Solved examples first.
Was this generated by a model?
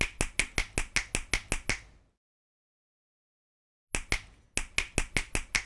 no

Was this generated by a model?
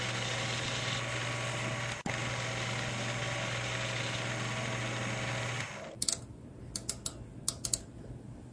no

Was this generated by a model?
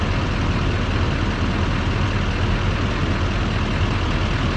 no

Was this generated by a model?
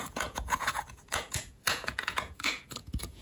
yes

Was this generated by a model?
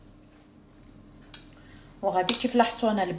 no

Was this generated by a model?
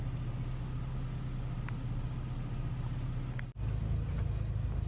no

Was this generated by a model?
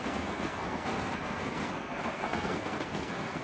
yes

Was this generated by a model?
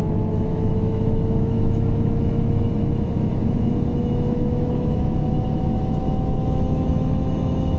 yes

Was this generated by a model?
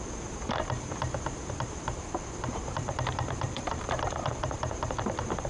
yes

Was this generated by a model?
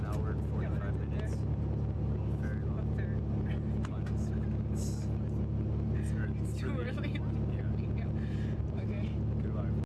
no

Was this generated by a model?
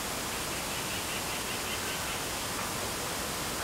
no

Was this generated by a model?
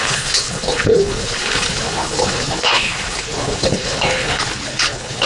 yes